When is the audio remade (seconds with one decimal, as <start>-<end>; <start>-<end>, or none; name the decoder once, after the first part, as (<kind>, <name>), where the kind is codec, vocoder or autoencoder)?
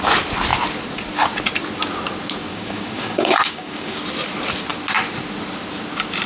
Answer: 2.5-4.0 (codec, DAC)